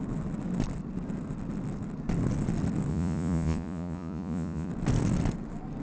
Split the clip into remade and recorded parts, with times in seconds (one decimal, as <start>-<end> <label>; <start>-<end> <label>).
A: 0.0-2.9 recorded; 2.9-4.7 remade; 4.7-5.8 recorded